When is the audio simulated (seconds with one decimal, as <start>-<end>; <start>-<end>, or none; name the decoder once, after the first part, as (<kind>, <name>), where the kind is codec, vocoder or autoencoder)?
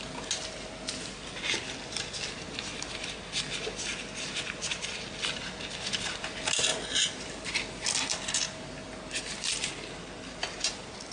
none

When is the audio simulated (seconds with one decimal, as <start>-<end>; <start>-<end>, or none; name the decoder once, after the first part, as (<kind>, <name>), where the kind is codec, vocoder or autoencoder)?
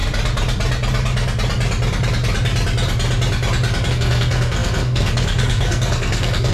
3.9-6.5 (codec, SNAC)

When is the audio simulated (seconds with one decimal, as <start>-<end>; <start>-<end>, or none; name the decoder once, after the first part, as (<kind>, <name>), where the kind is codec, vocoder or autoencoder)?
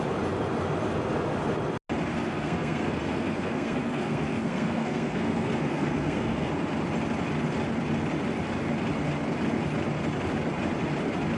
2.1-6.5 (codec, SNAC)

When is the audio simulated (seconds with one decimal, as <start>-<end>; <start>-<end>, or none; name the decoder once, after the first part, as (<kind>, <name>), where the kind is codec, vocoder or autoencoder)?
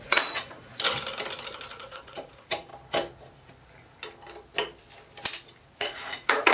0.0-0.7 (vocoder, Vocos); 1.7-2.7; 5.6-6.5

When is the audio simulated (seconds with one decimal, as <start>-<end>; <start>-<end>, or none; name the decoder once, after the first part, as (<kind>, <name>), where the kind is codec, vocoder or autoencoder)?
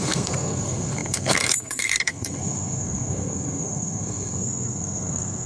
0.0-5.5 (codec, SNAC)